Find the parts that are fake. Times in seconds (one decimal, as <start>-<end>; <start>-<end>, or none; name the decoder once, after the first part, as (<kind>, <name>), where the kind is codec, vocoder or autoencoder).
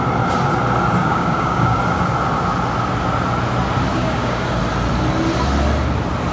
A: 1.0-1.8 (codec, DAC); 3.9-4.6